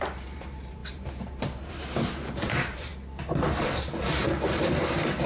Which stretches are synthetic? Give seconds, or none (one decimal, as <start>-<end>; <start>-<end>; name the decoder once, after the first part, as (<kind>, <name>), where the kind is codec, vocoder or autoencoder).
0.0-2.9 (vocoder, BigVGAN v2); 3.6-5.3